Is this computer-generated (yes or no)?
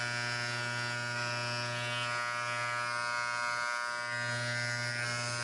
no